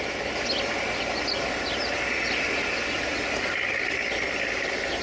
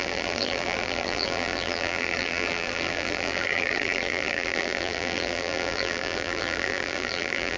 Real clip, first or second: first